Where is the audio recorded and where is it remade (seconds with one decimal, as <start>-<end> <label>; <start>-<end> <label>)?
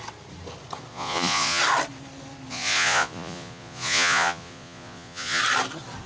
0.0-0.9 recorded; 0.9-1.6 remade; 1.6-2.5 recorded; 2.5-5.4 remade; 5.4-6.1 recorded